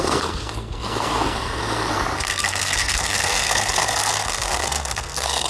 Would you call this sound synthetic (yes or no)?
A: yes